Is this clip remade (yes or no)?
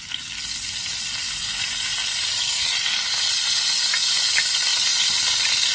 no